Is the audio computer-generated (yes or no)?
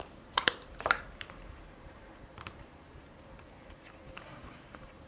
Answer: yes